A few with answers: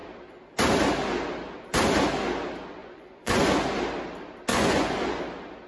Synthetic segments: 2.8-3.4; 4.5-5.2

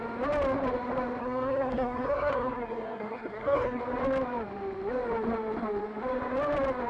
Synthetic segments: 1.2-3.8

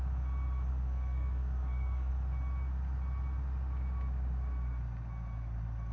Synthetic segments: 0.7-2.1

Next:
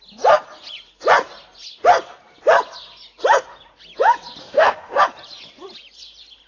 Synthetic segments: 4.4-5.0

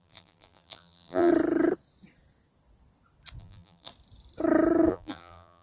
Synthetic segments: 0.0-1.3; 3.4-3.9; 4.9-5.6